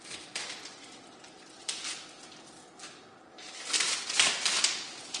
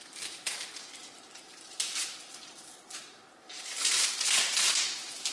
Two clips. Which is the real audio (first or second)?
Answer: first